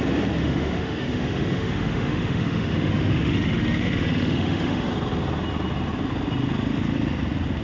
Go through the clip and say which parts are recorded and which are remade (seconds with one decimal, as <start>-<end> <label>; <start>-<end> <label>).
0.0-0.4 recorded; 0.4-4.9 remade; 4.9-7.6 recorded